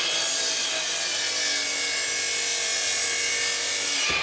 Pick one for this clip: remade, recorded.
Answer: recorded